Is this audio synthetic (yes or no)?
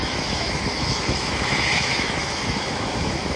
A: yes